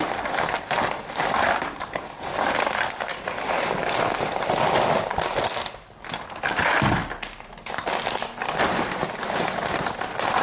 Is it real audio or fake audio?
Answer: real